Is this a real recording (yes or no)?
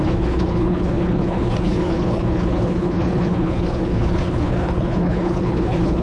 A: no